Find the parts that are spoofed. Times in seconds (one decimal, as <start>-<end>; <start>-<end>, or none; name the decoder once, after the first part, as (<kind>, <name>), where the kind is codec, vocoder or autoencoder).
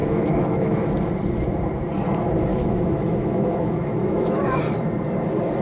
0.0-0.9 (autoencoder, DAC-VAE); 2.5-4.6